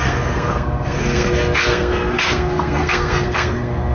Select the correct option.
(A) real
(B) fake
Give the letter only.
B